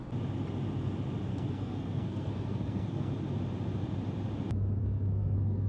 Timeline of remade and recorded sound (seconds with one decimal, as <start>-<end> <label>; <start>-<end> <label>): 0.0-1.3 recorded; 1.3-3.1 remade; 3.1-4.8 recorded; 4.8-5.7 remade